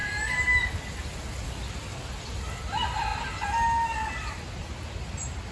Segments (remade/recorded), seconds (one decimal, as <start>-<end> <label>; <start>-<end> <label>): 0.0-5.5 recorded